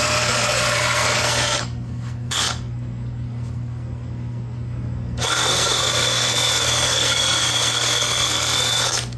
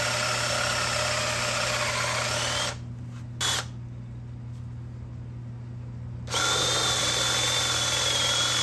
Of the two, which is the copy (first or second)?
first